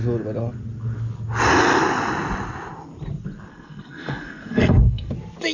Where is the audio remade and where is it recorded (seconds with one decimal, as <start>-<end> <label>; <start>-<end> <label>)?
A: 0.0-3.5 recorded; 3.5-5.1 remade; 5.1-5.5 recorded